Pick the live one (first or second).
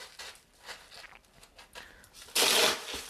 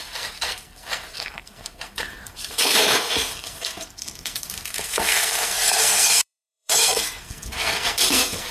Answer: first